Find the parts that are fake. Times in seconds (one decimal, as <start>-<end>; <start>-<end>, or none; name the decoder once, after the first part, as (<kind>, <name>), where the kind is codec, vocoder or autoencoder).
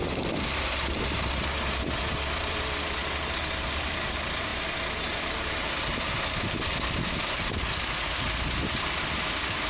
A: 0.0-4.5 (vocoder, BigVGAN v2); 5.1-9.7